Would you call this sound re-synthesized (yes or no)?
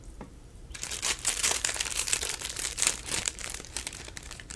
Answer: yes